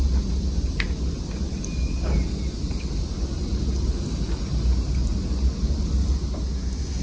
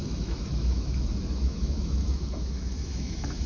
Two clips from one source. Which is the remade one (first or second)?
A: second